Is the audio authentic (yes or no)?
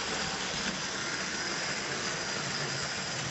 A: yes